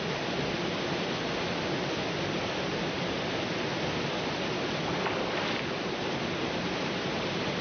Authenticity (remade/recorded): recorded